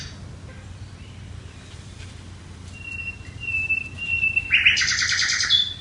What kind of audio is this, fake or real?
fake